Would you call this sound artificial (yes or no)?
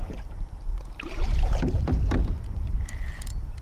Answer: yes